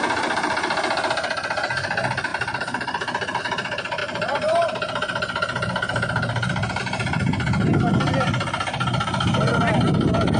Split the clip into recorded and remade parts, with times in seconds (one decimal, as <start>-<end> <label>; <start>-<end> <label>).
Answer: 0.0-2.3 recorded; 2.3-3.4 remade; 3.4-4.0 recorded; 4.0-6.8 remade; 6.8-10.4 recorded